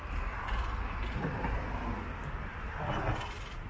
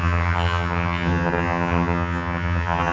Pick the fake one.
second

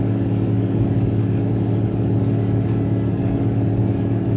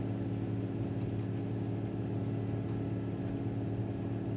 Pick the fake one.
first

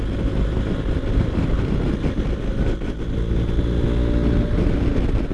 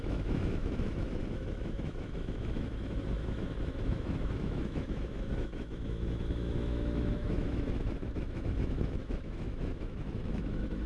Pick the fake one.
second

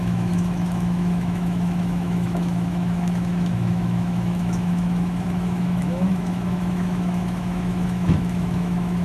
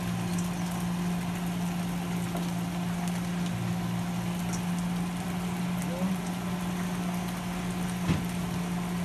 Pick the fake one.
first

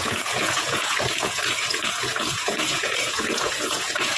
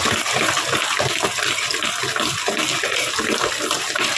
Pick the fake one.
first